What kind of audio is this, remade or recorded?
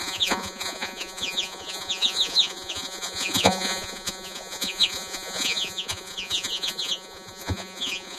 remade